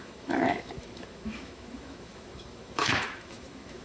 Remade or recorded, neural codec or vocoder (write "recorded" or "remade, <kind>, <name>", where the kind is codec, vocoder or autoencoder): remade, autoencoder, DAC-VAE